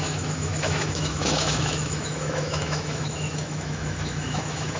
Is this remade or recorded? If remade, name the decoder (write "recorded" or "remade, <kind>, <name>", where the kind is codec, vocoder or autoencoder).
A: remade, autoencoder, DAC-VAE